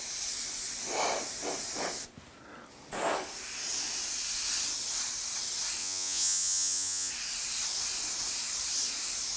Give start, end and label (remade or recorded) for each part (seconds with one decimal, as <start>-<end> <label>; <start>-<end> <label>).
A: 0.0-5.8 recorded; 5.8-7.1 remade; 7.1-9.4 recorded